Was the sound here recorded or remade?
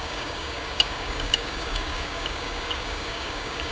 remade